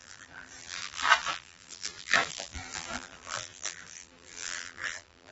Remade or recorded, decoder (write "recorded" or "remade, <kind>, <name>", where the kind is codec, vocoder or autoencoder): remade, vocoder, BigVGAN v2